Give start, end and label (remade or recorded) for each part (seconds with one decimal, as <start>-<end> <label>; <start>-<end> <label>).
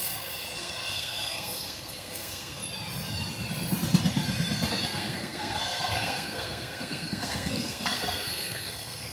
0.0-2.6 remade; 2.6-4.7 recorded; 4.7-9.1 remade